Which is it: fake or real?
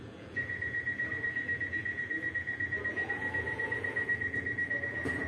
fake